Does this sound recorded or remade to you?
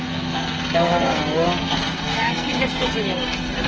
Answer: remade